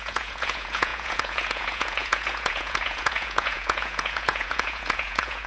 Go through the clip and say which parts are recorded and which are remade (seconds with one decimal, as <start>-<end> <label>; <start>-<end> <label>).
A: 0.0-5.5 remade